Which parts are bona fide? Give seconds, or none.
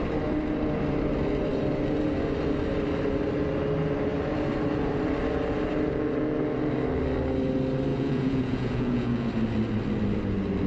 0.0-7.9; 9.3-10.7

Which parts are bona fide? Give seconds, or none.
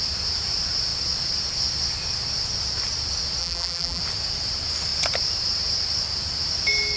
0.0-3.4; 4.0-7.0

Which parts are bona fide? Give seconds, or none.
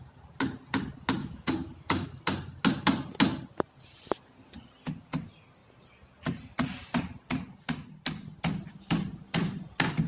0.0-1.2; 2.2-10.1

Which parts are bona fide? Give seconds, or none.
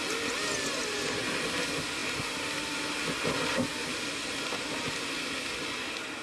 0.0-6.2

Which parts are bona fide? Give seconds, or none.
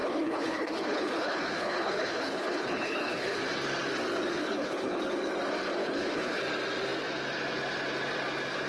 3.4-4.3; 5.0-5.8; 6.4-8.7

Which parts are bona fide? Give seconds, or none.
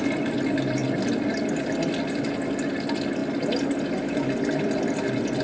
0.0-5.4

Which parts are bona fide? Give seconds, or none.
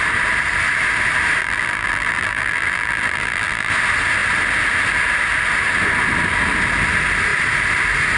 0.0-1.4; 3.7-8.2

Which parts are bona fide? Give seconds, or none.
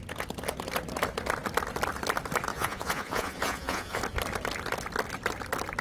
0.0-2.5; 4.0-5.8